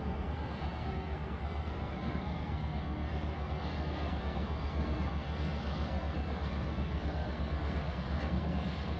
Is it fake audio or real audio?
fake